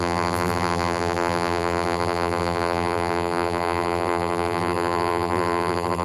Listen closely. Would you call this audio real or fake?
fake